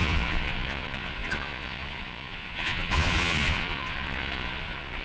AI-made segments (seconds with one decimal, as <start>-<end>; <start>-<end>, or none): 0.0-5.0